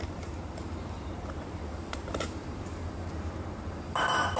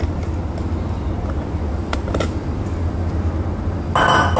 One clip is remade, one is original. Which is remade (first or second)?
first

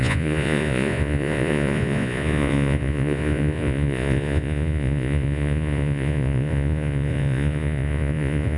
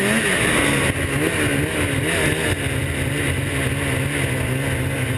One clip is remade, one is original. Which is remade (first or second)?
first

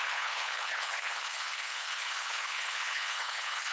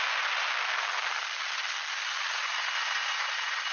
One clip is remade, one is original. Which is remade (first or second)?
first